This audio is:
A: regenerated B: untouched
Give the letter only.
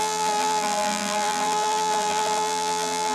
A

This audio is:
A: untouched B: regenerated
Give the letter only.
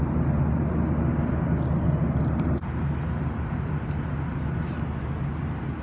A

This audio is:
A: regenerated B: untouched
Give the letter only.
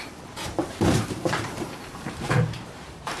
A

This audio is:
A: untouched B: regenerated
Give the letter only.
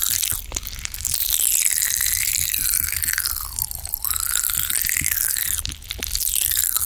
A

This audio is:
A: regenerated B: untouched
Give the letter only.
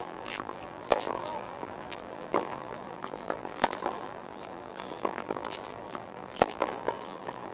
A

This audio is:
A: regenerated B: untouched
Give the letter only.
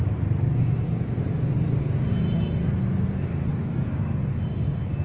B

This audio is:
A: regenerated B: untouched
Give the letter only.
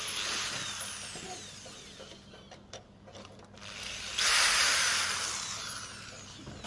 B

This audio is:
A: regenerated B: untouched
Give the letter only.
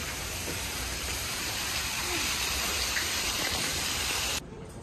A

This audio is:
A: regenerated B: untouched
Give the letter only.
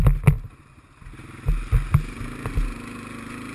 B